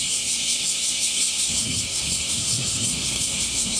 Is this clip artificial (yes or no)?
yes